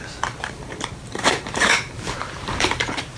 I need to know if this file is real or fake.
fake